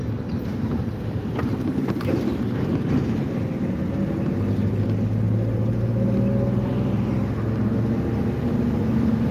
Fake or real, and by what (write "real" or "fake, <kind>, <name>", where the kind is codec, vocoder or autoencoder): real